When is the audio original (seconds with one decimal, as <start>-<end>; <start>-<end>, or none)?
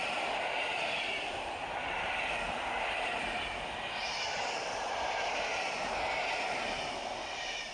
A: 0.0-7.7